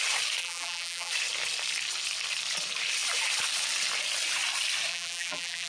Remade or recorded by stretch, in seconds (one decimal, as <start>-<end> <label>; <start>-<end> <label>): 0.0-0.4 recorded; 0.4-1.1 remade; 1.1-4.9 recorded; 4.9-5.7 remade